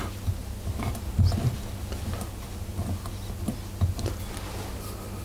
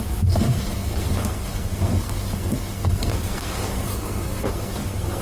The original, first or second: first